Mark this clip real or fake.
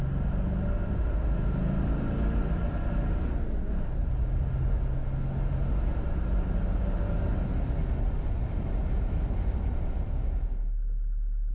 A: real